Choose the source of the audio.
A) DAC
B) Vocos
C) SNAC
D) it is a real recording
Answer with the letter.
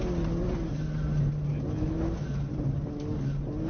D